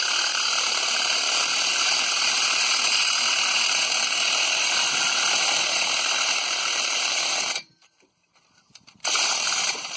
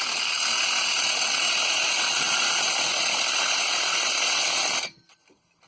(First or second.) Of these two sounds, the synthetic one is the first